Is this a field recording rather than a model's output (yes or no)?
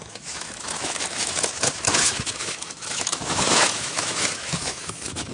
no